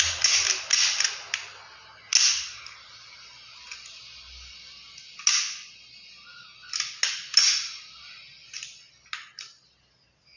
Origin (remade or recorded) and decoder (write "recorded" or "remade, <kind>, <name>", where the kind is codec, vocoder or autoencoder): recorded